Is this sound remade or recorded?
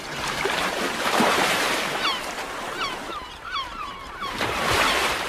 remade